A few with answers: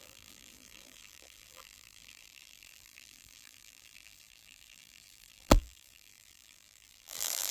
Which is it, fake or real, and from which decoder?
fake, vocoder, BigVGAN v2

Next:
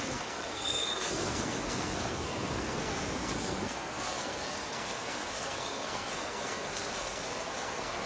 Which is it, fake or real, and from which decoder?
fake, codec, SNAC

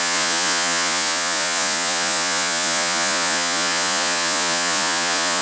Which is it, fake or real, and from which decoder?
fake, vocoder, Vocos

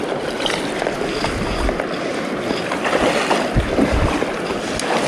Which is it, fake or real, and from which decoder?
real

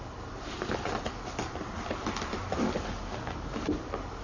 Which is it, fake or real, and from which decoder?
real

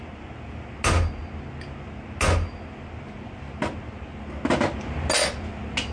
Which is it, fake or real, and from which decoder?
real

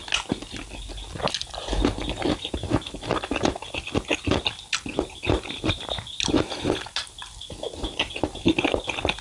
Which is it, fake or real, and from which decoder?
real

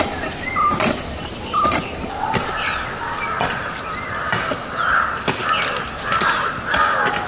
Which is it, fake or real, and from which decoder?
real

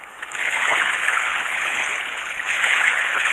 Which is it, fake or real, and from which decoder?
fake, codec, HILCodec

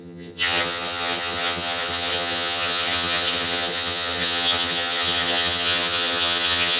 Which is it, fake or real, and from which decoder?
fake, vocoder, HiFi-GAN